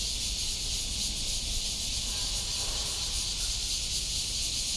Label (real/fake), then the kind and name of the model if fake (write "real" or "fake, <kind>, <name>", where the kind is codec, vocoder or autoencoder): real